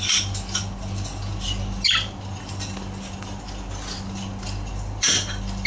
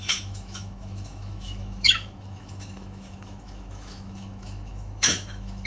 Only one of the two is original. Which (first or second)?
first